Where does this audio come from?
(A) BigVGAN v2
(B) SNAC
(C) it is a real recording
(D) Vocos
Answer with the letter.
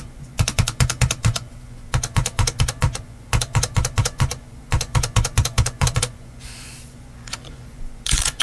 D